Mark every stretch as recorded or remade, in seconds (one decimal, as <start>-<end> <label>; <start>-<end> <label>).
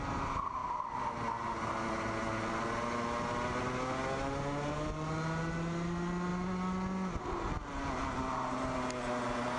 0.0-9.6 recorded